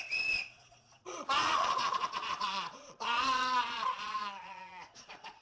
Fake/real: fake